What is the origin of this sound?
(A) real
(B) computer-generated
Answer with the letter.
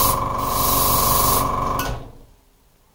A